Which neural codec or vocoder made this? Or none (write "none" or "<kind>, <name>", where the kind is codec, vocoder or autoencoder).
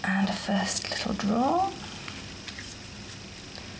none